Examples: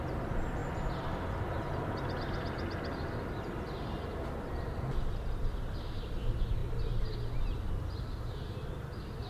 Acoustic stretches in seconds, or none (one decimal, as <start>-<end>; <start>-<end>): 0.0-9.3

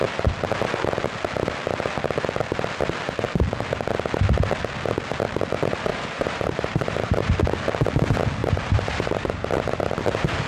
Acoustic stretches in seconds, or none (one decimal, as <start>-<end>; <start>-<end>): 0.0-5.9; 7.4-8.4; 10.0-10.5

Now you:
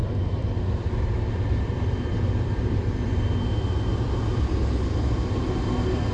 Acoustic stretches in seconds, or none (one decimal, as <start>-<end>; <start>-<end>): 3.4-3.9; 5.4-6.1

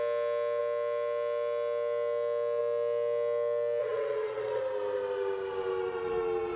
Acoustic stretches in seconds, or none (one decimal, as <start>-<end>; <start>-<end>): 0.0-3.8; 4.6-6.6

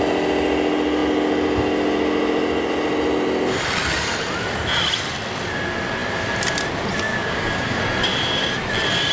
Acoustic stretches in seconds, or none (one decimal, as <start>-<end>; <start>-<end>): 0.0-7.1; 7.8-9.1

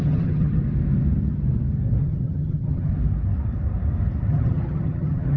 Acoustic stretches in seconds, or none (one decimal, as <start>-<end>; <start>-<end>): 0.6-2.0; 2.9-4.3

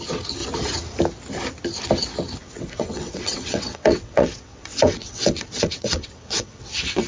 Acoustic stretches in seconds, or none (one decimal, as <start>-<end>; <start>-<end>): 0.0-2.4

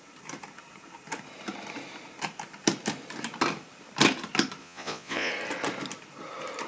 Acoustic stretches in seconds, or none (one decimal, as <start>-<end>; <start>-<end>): 0.0-4.6; 5.3-6.7